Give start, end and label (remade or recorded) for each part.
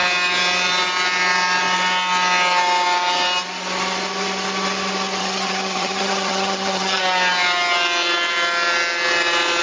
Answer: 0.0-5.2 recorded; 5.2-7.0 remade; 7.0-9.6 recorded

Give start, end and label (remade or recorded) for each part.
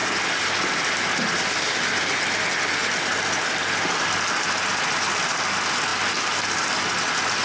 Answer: 0.0-7.4 recorded